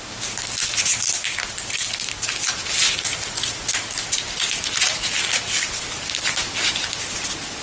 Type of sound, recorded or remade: recorded